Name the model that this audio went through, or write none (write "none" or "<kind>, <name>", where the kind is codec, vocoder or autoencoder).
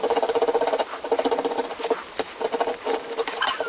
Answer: none